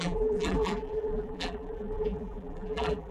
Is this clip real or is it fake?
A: fake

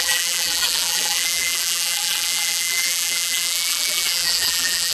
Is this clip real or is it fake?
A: fake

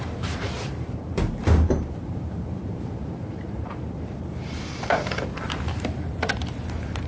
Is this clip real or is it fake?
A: fake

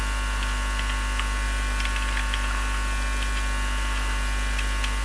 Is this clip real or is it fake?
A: real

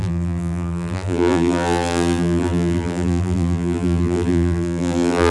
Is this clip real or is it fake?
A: fake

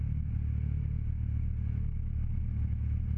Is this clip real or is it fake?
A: real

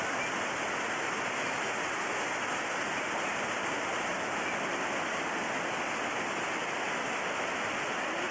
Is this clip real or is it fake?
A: real